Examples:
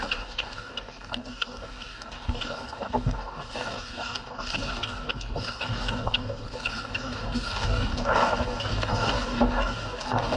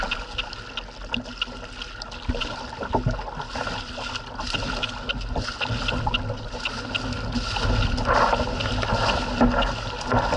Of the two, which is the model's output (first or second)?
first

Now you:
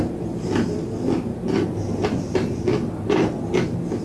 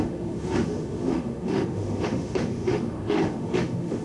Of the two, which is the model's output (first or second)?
second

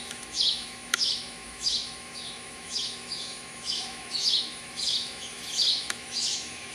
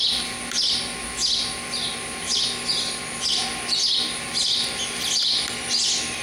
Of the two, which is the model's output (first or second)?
first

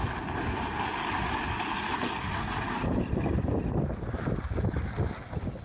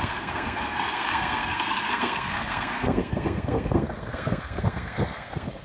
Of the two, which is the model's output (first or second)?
second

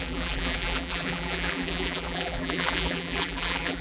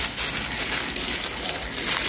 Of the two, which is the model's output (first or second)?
first